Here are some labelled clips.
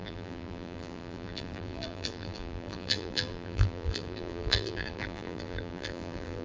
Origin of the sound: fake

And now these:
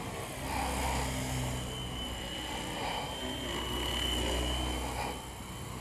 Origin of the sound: real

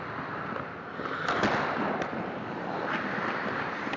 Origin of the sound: real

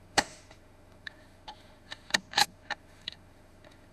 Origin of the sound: fake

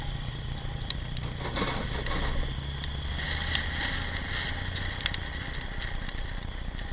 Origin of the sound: real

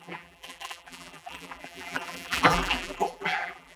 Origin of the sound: fake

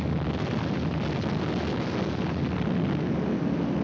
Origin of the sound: real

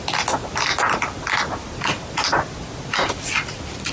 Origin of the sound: real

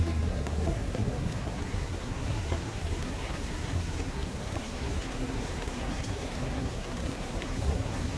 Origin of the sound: fake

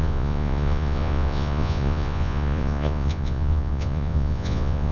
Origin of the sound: fake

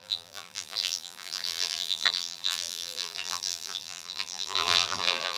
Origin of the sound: fake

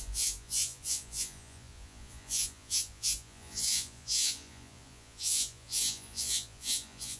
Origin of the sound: fake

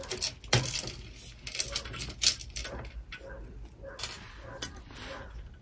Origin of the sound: real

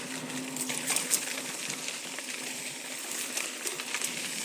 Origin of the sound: real